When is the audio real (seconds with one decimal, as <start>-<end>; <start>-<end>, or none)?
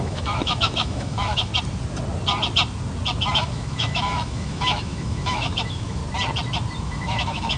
1.5-3.3; 6.0-6.8